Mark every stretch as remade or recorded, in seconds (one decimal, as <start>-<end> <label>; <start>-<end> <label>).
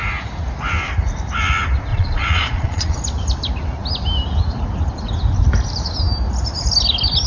0.0-1.9 recorded; 1.9-3.0 remade; 3.0-7.3 recorded